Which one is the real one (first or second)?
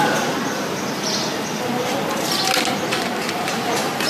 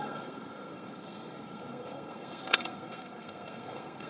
first